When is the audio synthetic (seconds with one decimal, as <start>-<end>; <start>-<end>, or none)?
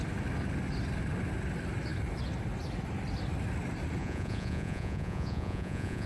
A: 4.0-6.1